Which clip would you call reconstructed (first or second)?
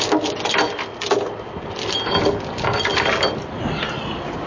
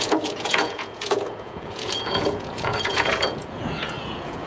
second